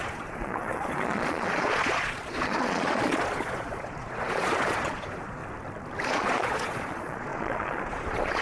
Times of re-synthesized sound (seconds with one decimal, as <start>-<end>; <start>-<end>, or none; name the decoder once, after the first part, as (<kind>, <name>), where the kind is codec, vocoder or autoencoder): 0.0-5.4 (vocoder, Vocos); 6.1-8.4